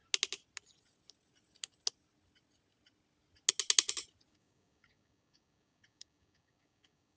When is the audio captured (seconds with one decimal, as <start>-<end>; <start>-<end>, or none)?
0.0-4.3